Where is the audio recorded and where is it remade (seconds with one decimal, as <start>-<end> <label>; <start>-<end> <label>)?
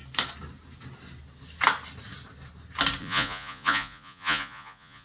0.0-3.0 recorded; 3.0-5.0 remade